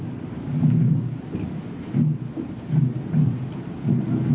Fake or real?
fake